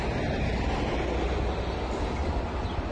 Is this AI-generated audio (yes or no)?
no